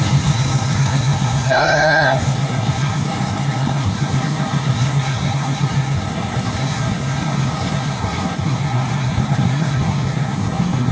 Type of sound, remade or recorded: remade